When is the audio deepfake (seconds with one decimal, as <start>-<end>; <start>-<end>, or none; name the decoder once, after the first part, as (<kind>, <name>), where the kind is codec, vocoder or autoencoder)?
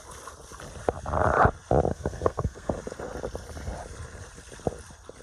1.9-2.7 (codec, SNAC)